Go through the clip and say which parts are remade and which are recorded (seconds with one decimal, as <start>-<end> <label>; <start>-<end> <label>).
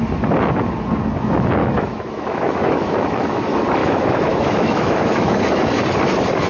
0.0-1.6 recorded; 1.6-3.4 remade; 3.4-3.8 recorded; 3.8-5.8 remade; 5.8-6.5 recorded